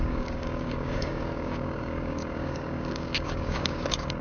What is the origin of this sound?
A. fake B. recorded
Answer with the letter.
A